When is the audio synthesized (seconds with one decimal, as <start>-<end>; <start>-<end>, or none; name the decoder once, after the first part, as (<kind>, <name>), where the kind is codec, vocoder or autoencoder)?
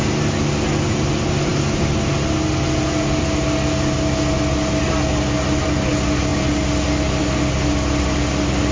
none